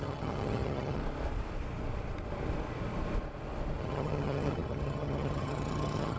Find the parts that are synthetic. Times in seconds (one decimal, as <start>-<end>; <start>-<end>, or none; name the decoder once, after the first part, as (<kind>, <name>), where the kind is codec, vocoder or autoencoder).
0.0-1.0 (vocoder, HiFi-GAN); 3.8-6.2